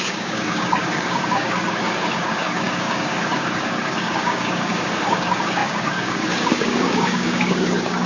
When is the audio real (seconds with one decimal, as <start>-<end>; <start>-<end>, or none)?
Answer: none